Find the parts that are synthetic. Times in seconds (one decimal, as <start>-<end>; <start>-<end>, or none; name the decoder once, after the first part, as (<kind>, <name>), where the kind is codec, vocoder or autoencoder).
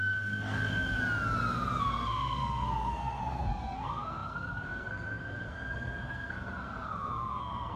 0.0-1.0 (codec, SNAC); 1.8-7.8